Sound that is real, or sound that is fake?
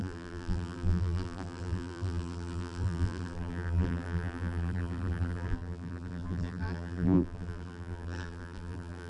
fake